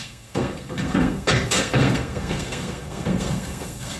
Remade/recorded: remade